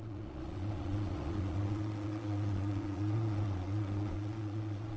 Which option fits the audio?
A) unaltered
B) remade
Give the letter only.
B